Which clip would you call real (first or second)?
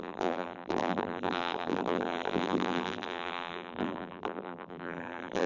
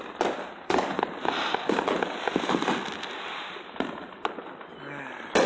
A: second